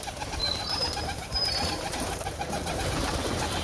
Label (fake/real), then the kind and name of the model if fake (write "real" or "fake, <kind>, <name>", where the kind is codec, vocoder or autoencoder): fake, vocoder, BigVGAN v2